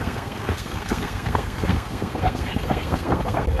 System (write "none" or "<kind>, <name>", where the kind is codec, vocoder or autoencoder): codec, SNAC